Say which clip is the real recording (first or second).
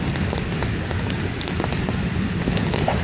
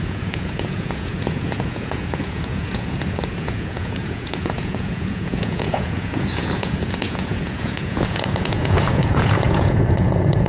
first